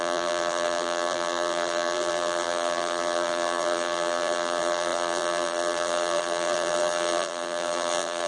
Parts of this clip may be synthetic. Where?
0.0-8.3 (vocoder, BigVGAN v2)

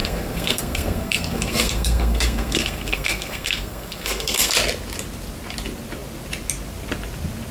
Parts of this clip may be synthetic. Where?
0.0-4.5 (codec, SNAC)